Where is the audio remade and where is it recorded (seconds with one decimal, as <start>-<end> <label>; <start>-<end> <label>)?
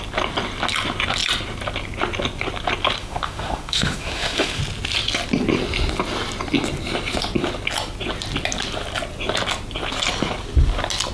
0.0-3.0 recorded; 3.0-4.6 remade; 4.6-11.1 recorded